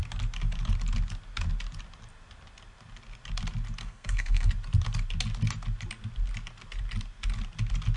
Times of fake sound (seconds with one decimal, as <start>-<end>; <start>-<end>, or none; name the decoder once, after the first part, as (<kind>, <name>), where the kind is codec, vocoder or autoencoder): 3.8-4.5 (codec, SNAC)